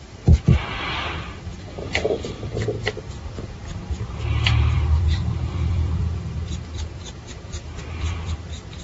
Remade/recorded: remade